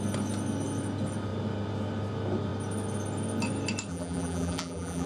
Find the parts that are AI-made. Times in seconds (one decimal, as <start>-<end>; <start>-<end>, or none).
3.9-5.1